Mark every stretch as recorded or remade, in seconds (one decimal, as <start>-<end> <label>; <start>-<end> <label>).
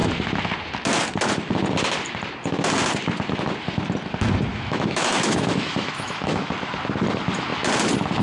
0.0-4.5 recorded; 4.5-6.5 remade; 6.5-8.2 recorded